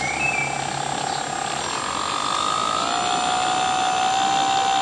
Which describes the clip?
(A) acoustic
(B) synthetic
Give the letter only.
A